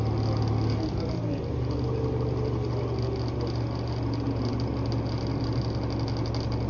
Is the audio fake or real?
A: real